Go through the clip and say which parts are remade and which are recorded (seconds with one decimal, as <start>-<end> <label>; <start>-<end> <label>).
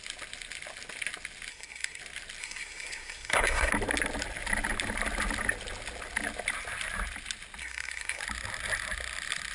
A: 0.0-1.5 recorded; 1.5-2.0 remade; 2.0-2.4 recorded; 2.4-3.7 remade; 3.7-7.6 recorded; 7.6-8.2 remade; 8.2-9.5 recorded